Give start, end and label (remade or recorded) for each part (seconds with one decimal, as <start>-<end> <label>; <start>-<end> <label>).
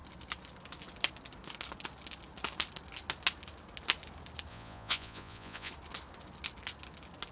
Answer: 0.0-4.5 recorded; 4.5-5.7 remade; 5.7-7.3 recorded